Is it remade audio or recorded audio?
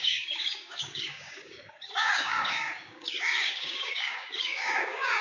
remade